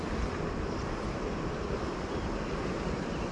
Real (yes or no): yes